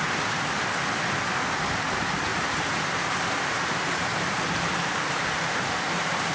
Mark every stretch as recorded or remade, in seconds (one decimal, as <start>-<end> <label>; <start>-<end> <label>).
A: 0.0-2.3 recorded; 2.3-6.3 remade